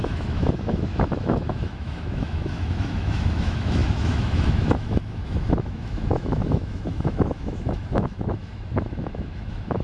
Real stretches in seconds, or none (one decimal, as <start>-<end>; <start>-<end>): none